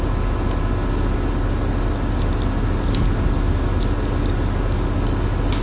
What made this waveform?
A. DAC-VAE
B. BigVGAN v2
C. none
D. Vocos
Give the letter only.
C